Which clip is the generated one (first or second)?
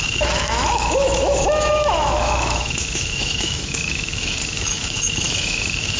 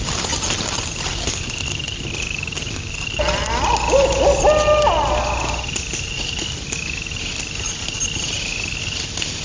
first